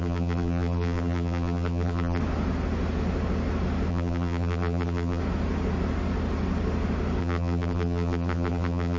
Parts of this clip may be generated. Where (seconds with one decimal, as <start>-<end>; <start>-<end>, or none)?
0.0-2.2; 3.9-5.2; 7.2-9.0